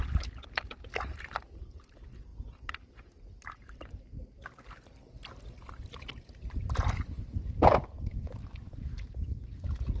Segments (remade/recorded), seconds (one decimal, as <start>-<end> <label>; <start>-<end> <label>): 0.0-10.0 recorded